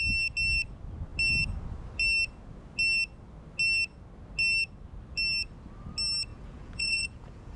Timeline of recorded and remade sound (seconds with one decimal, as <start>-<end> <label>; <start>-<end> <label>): 0.0-6.3 recorded; 6.3-7.6 remade